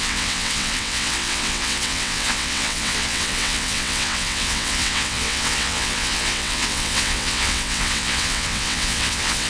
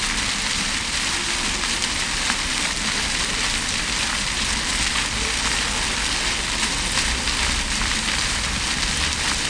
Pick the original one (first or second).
second